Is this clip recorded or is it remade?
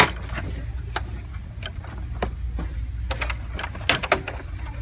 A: recorded